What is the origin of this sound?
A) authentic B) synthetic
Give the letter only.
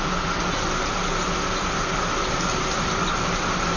A